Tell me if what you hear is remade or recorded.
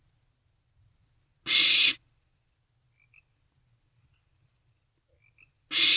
recorded